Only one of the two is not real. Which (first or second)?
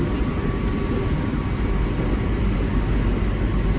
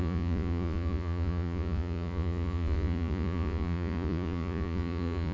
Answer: second